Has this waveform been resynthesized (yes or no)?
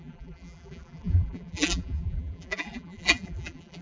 yes